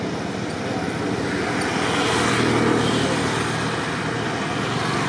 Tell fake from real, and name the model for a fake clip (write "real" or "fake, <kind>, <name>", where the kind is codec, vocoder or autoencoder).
real